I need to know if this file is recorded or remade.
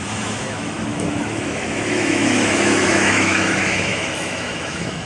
remade